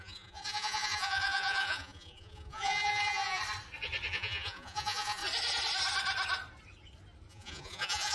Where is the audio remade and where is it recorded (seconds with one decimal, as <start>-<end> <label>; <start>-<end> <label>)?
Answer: 0.0-3.4 remade; 3.4-4.1 recorded; 4.1-5.2 remade; 5.2-7.3 recorded; 7.3-8.1 remade